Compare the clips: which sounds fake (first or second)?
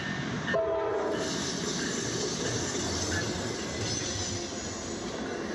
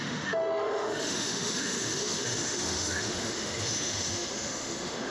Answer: second